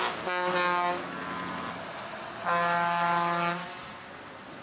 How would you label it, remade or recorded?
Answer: recorded